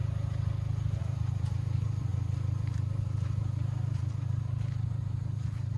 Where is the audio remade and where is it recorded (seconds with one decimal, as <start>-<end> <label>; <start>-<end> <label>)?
0.0-1.0 recorded; 1.0-5.8 remade